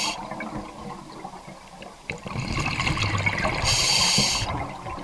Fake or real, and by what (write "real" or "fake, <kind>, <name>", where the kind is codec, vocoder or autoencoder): real